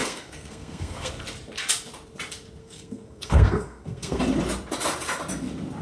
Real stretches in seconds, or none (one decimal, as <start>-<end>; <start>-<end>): 1.1-2.6; 4.2-5.8

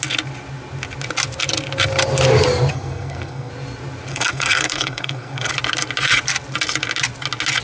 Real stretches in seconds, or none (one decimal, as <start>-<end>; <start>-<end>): 0.0-2.7; 3.5-4.1; 5.5-7.6

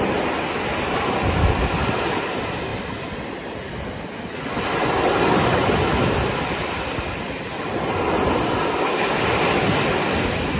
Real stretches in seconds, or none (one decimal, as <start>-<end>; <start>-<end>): 0.0-10.6

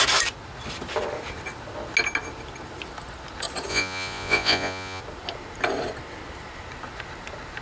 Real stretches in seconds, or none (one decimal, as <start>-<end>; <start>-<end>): 0.0-3.7; 5.0-7.6

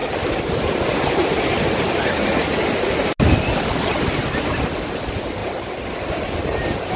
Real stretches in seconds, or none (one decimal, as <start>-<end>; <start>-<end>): 1.4-5.4; 6.0-7.0

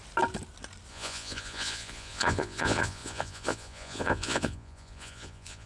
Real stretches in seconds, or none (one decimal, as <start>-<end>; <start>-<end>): 0.0-0.9

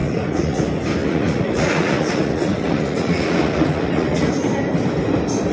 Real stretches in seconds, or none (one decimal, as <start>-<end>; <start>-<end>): 0.6-1.0; 4.3-5.5